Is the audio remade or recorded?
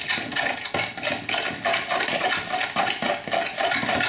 recorded